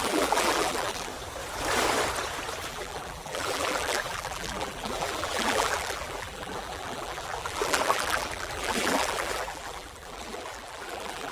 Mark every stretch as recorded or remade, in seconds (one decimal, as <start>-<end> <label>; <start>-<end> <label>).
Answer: 0.0-1.1 remade; 1.1-2.7 recorded; 2.7-11.3 remade